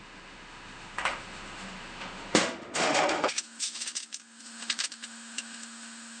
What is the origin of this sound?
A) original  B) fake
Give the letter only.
B